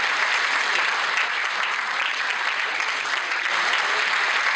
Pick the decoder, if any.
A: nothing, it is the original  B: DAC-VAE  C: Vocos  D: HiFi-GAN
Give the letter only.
A